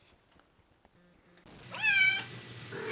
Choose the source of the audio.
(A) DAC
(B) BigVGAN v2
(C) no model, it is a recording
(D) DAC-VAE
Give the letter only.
C